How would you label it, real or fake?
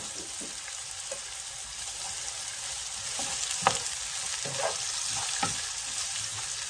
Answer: real